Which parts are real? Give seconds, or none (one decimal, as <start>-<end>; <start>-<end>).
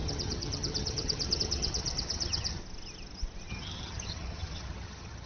2.6-3.5